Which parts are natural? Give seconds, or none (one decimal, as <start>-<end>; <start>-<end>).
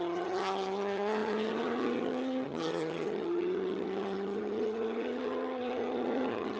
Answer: none